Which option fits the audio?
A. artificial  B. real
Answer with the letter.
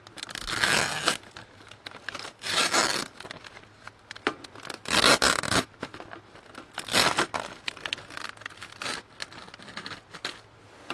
B